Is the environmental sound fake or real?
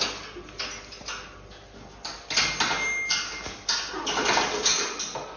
real